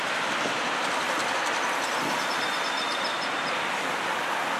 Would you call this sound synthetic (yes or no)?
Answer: yes